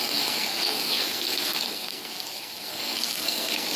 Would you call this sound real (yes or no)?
no